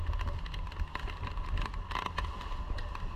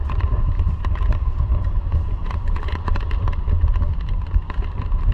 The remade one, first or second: second